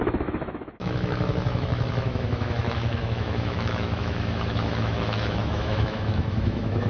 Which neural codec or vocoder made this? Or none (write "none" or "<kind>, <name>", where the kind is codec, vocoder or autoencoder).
autoencoder, DAC-VAE